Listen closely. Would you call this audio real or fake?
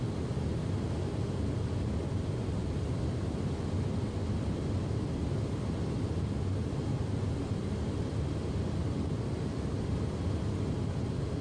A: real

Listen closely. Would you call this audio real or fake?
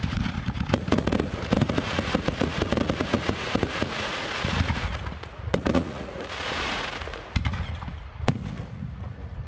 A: fake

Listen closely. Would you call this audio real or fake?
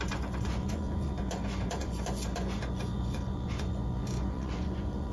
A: fake